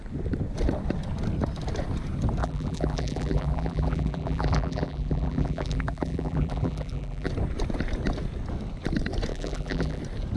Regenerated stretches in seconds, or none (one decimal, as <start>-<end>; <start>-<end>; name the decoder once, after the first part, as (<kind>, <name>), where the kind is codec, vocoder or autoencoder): 2.4-7.3 (vocoder, BigVGAN v2); 9.3-10.0